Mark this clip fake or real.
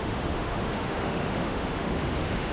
fake